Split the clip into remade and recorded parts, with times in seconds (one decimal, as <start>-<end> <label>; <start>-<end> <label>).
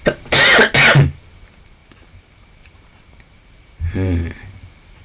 0.0-1.8 recorded; 1.8-5.0 remade